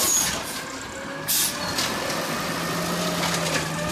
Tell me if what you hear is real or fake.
real